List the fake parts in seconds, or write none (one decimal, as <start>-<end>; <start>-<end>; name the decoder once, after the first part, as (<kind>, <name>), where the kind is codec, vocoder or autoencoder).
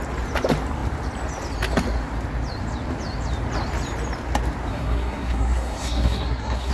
4.7-6.7 (codec, SNAC)